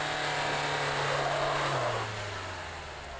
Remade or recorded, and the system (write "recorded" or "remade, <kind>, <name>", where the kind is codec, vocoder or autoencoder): recorded